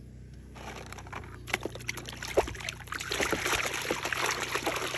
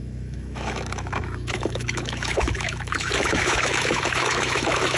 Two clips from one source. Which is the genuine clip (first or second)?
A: first